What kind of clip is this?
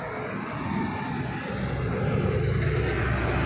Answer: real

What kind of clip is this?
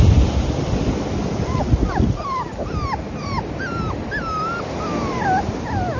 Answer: real